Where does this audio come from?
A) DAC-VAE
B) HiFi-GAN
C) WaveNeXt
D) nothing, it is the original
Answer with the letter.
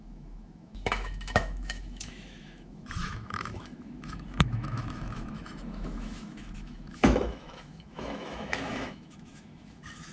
A